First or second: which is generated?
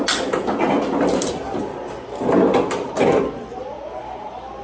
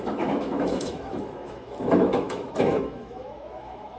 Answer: second